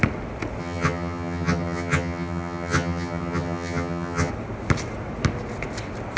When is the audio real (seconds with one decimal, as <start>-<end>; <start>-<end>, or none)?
0.0-0.6; 4.3-6.2